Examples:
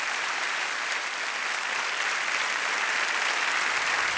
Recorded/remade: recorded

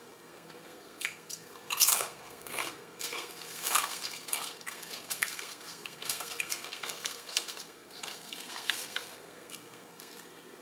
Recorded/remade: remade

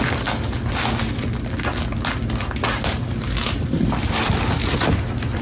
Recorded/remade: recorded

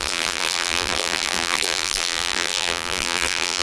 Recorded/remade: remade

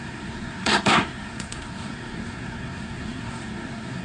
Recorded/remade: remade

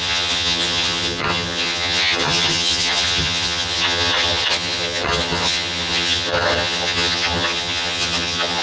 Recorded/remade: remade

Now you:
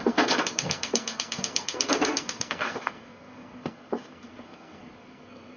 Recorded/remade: remade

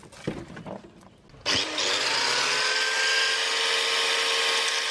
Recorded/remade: recorded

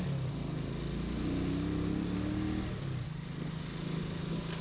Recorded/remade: recorded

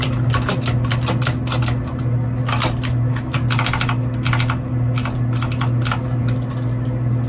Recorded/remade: recorded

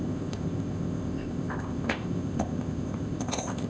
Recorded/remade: remade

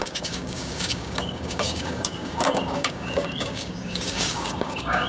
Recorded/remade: remade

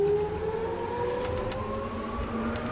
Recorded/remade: recorded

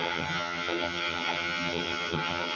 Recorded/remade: remade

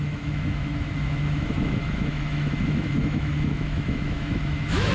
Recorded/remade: remade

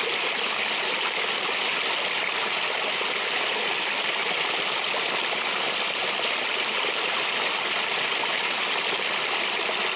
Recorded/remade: recorded